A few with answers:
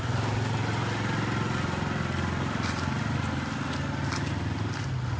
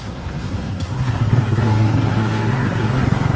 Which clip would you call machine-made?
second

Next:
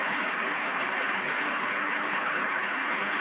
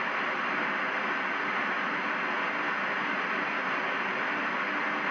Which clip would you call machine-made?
first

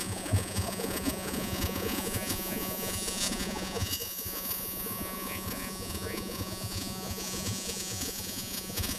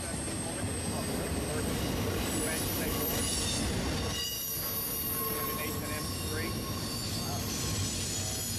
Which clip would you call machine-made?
first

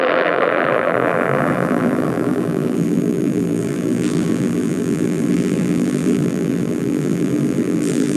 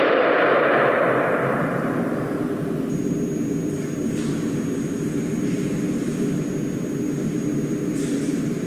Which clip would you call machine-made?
first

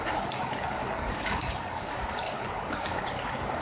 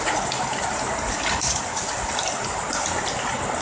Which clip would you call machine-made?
first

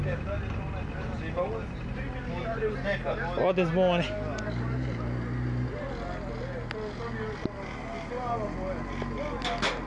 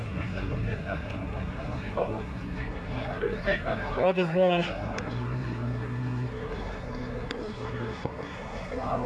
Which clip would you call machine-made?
second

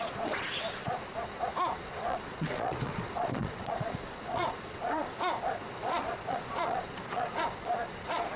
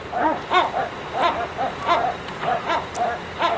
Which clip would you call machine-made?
first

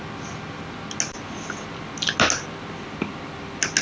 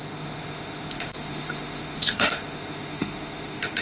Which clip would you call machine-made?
second